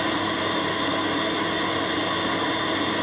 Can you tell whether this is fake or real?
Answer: real